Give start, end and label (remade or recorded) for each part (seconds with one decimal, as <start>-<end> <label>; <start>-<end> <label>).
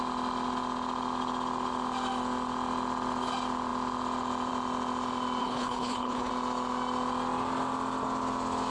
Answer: 0.0-5.4 recorded; 5.4-6.3 remade; 6.3-8.7 recorded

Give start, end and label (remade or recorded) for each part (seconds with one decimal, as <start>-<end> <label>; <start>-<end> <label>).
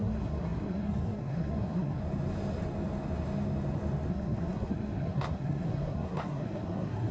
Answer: 0.0-2.0 remade; 2.0-4.1 recorded; 4.1-7.1 remade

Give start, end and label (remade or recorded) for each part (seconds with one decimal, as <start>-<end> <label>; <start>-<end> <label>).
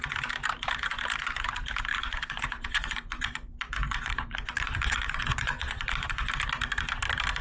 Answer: 0.0-1.9 recorded; 1.9-6.3 remade; 6.3-7.4 recorded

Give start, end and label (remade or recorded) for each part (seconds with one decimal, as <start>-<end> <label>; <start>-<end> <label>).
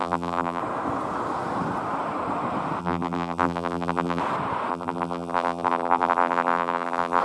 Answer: 0.0-0.6 remade; 0.6-2.8 recorded; 2.8-4.2 remade; 4.2-4.7 recorded; 4.7-7.2 remade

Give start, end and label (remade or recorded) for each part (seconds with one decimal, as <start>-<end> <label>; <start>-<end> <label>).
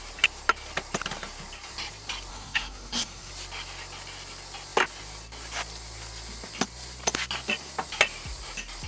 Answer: 0.0-2.3 recorded; 2.3-3.3 remade; 3.3-8.9 recorded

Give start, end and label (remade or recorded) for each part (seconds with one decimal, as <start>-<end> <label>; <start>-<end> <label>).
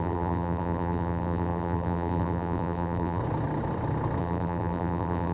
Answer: 0.0-3.2 remade; 3.2-4.2 recorded; 4.2-5.3 remade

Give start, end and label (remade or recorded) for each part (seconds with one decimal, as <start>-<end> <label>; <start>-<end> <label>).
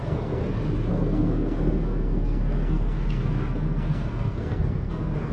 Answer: 0.0-0.4 remade; 0.4-0.9 recorded; 0.9-5.3 remade